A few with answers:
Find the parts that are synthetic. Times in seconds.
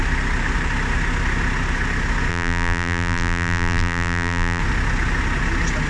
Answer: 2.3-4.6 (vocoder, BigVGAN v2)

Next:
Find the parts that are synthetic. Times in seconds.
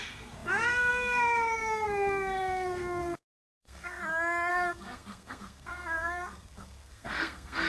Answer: 0.0-4.0 (codec, SNAC); 4.5-7.7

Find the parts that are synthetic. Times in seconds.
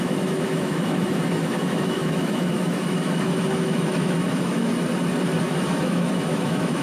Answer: 0.0-4.7 (autoencoder, DAC-VAE); 5.4-6.8